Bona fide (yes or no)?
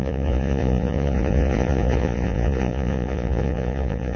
no